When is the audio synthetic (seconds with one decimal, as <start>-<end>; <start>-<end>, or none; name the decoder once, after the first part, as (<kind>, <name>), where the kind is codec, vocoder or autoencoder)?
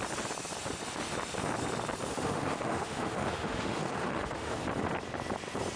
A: 2.1-4.5 (autoencoder, DAC-VAE)